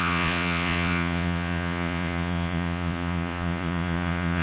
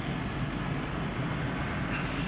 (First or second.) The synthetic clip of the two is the first